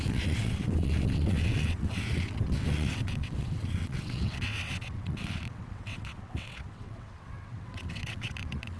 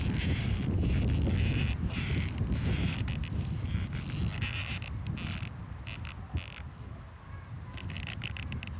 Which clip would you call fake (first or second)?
first